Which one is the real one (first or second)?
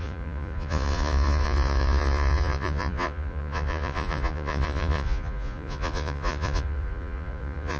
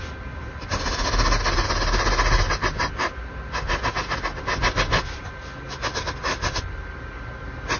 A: second